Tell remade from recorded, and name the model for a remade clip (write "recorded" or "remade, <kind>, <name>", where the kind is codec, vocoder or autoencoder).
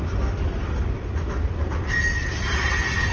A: recorded